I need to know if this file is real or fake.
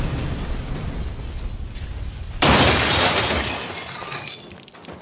real